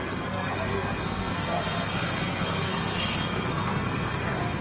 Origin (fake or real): fake